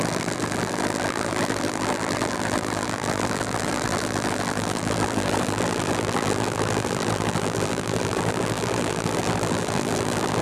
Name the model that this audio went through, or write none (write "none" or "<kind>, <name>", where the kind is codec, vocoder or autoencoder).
vocoder, BigVGAN v2